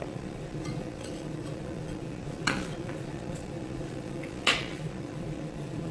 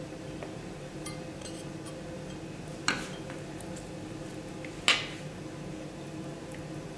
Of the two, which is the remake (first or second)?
first